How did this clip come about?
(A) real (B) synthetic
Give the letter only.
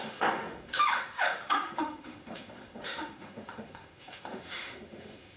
B